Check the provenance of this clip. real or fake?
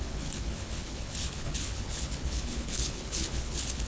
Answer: fake